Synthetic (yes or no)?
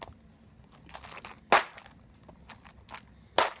no